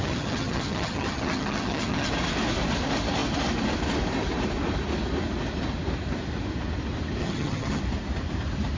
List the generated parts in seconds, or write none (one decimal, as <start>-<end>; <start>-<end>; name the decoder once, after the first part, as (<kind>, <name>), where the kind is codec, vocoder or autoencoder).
0.0-2.1 (vocoder, HiFi-GAN); 7.2-7.8